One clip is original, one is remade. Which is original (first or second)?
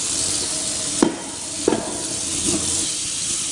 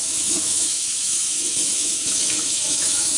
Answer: first